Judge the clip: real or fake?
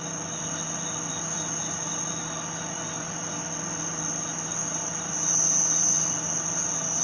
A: real